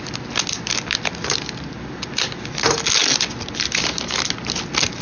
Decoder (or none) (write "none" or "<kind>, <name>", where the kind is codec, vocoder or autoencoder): none